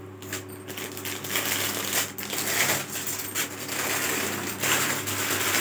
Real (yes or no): yes